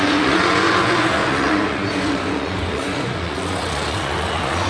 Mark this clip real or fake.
fake